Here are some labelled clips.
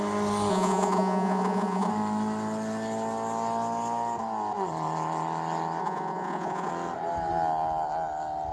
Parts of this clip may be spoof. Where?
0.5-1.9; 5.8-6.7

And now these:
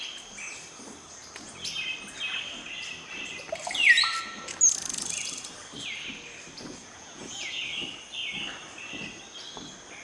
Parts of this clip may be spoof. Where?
6.8-7.6

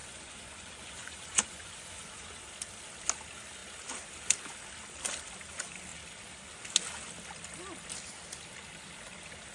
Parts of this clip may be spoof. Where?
0.0-2.4

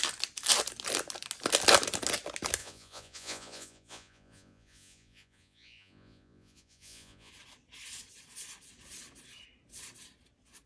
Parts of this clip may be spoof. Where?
2.6-7.3